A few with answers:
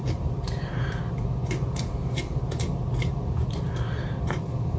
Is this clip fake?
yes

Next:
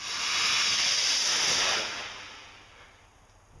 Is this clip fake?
no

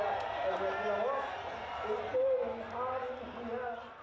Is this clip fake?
no